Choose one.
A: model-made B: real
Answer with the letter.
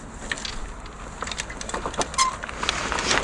B